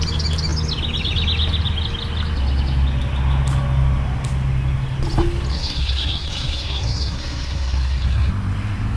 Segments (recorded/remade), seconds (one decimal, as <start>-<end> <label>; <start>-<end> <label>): 0.0-5.5 recorded; 5.5-8.3 remade; 8.3-9.0 recorded